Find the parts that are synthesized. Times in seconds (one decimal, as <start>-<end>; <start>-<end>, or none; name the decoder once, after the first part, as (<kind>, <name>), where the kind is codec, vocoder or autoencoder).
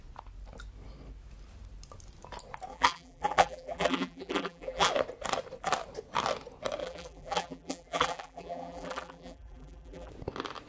2.7-4.9 (vocoder, BigVGAN v2); 6.8-10.1